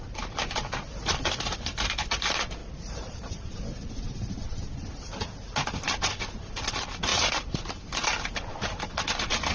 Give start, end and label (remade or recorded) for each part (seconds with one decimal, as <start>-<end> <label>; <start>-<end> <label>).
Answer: 0.0-9.5 recorded

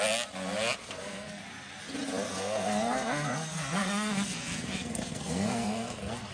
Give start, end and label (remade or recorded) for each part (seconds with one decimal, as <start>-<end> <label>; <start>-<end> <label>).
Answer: 0.0-0.8 recorded; 0.8-1.4 remade; 1.4-2.3 recorded; 2.3-6.3 remade

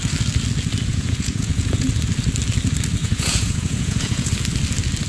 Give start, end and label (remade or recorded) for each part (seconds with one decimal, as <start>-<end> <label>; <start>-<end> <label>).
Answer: 0.0-0.9 recorded; 0.9-1.9 remade; 1.9-3.0 recorded; 3.0-4.3 remade; 4.3-5.1 recorded

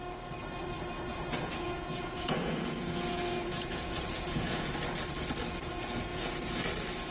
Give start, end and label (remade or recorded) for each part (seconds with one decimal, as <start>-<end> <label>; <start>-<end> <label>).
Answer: 0.0-1.1 recorded; 1.1-4.7 remade; 4.7-6.1 recorded; 6.1-6.6 remade; 6.6-7.1 recorded

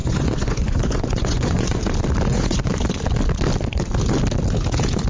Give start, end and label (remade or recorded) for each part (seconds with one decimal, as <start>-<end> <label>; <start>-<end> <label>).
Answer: 0.0-1.8 remade; 1.8-2.3 recorded; 2.3-2.7 remade; 2.7-5.1 recorded

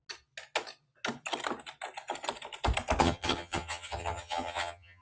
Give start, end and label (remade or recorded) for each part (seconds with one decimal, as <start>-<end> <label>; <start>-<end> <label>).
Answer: 0.0-3.0 recorded; 3.0-5.0 remade